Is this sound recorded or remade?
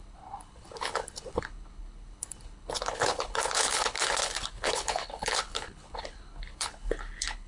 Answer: remade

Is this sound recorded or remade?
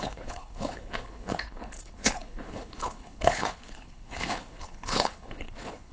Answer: remade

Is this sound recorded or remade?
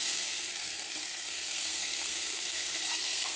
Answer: remade